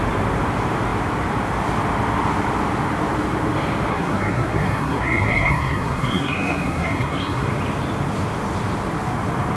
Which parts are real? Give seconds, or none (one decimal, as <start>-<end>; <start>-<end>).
0.0-3.9; 7.5-9.6